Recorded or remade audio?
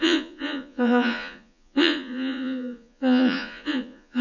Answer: remade